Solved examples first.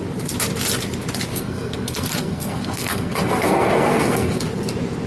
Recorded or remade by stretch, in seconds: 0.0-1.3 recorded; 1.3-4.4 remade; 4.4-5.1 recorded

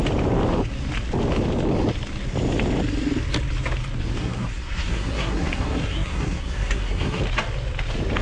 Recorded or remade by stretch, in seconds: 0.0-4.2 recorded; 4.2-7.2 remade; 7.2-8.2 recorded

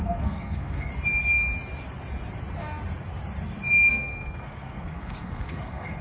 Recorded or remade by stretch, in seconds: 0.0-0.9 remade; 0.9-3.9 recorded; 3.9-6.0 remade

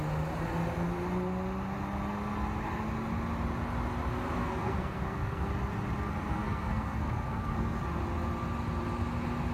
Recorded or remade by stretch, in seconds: 0.0-4.4 recorded; 4.4-5.5 remade; 5.5-6.3 recorded; 6.3-7.8 remade; 7.8-9.5 recorded

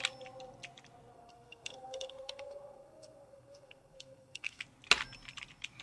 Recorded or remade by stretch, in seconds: 0.0-1.1 recorded; 1.1-4.6 remade; 4.6-5.8 recorded

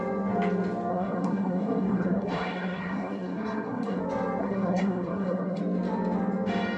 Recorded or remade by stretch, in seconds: 0.0-0.9 recorded; 0.9-4.0 remade; 4.0-4.4 recorded; 4.4-5.6 remade; 5.6-6.8 recorded

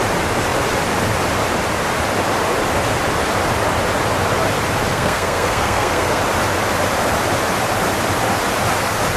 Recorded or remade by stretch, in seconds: 0.0-4.9 recorded; 4.9-6.2 remade; 6.2-9.2 recorded

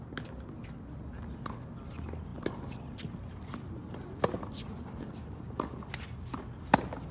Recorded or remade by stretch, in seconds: 0.0-7.1 recorded